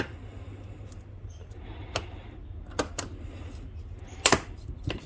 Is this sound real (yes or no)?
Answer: yes